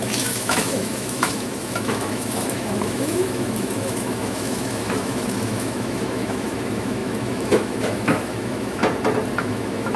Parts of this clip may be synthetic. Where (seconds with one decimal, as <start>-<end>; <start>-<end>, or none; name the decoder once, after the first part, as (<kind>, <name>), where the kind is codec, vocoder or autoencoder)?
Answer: 0.0-8.8 (autoencoder, DAC-VAE); 9.4-10.0